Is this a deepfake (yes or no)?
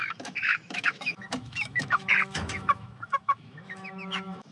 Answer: yes